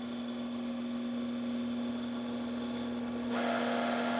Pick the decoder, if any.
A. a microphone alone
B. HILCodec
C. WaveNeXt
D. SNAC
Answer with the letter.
A